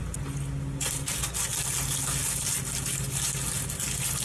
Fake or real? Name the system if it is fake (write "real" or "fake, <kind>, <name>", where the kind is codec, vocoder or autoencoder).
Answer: real